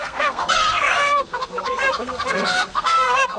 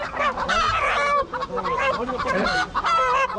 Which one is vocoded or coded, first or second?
first